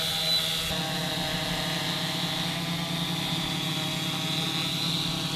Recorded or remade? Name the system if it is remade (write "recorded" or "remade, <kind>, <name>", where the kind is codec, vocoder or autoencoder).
recorded